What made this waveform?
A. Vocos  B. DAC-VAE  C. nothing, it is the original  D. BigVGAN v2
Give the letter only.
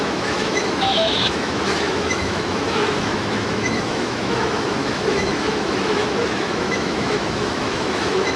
B